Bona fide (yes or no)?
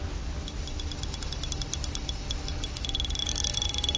yes